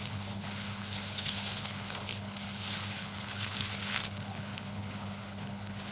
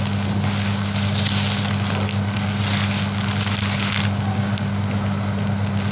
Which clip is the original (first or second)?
second